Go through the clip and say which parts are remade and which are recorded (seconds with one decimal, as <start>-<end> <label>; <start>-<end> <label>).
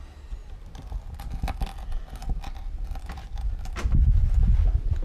0.0-2.2 recorded; 2.2-4.6 remade; 4.6-5.0 recorded